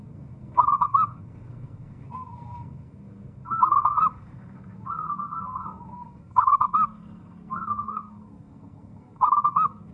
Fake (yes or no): yes